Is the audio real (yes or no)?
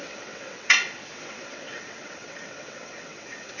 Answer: no